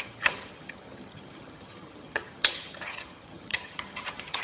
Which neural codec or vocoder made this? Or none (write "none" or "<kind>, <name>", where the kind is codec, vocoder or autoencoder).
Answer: vocoder, HiFi-GAN